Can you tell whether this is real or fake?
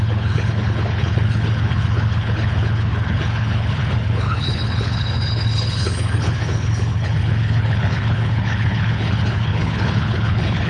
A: fake